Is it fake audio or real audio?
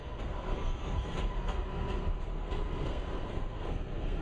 fake